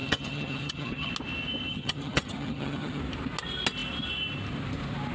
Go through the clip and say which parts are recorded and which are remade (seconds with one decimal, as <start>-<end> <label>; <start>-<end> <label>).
0.0-1.1 remade; 1.1-1.7 recorded; 1.7-3.0 remade; 3.0-5.1 recorded